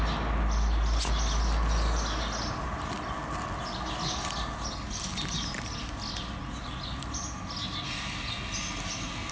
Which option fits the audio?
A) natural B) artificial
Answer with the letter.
A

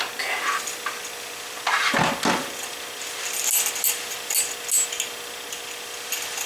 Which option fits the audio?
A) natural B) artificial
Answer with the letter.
A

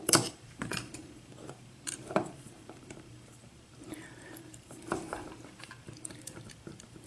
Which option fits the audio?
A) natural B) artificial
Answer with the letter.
B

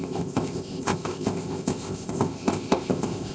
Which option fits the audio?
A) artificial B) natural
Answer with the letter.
A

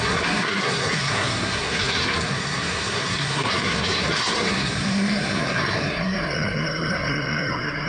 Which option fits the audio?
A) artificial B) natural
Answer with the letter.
A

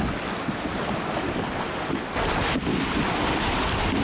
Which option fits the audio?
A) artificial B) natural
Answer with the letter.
B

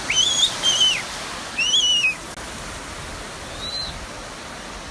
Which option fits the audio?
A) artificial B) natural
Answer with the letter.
B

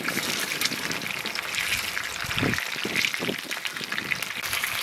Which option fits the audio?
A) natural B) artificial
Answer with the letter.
A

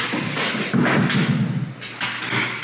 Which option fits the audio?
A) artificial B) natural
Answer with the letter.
B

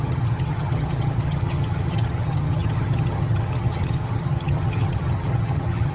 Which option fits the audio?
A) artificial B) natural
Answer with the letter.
A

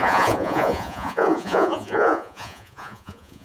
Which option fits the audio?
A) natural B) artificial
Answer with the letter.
B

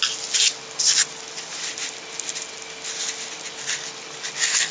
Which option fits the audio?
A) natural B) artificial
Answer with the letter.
A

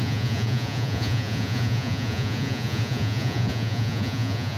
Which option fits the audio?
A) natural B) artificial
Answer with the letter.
B